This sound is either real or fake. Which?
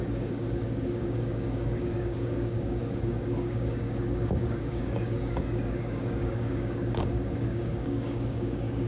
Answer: fake